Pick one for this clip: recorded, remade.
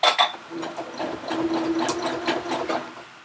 recorded